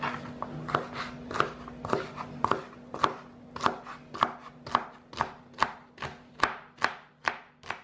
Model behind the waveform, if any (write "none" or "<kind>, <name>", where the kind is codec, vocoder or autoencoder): none